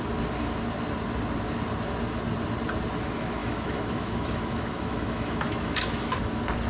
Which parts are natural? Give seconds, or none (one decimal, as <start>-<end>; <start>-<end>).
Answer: 0.0-3.4; 6.0-6.7